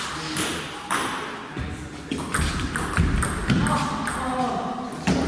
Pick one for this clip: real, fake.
real